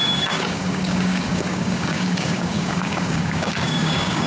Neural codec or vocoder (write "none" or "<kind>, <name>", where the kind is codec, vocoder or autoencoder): codec, DAC